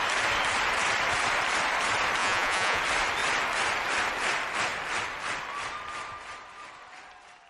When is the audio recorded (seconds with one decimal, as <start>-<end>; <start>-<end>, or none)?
0.0-2.2; 2.8-7.5